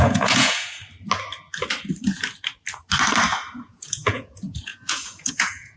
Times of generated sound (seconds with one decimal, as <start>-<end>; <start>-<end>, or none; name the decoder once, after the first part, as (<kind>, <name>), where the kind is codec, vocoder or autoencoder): 0.0-0.8 (vocoder, Vocos); 3.5-5.8